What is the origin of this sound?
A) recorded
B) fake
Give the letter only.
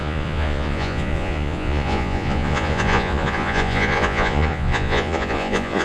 B